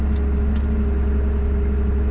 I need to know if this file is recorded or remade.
recorded